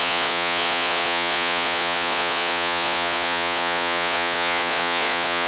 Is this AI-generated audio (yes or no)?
yes